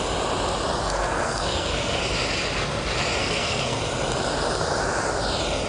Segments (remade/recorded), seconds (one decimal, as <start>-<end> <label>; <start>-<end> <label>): 0.0-0.8 recorded; 0.8-2.0 remade; 2.0-3.2 recorded; 3.2-3.8 remade; 3.8-5.7 recorded